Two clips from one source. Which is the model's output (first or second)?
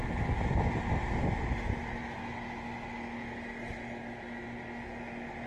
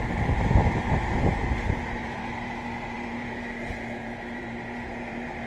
second